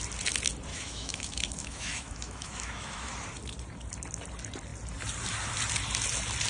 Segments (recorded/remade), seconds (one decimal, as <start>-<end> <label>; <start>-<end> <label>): 0.0-0.7 recorded; 0.7-3.1 remade; 3.1-6.5 recorded